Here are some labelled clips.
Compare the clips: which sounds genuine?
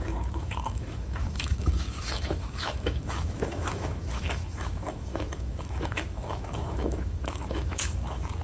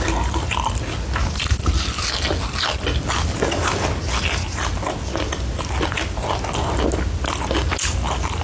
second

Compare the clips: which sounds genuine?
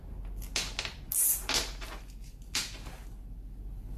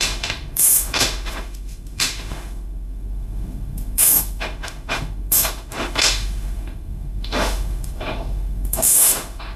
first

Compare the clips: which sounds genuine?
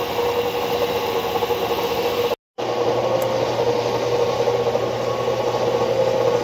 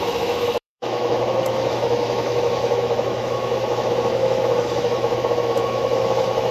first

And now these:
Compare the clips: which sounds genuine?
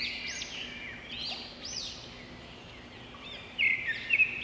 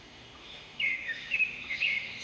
first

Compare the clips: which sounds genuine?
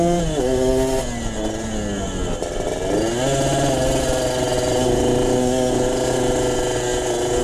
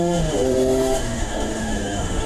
first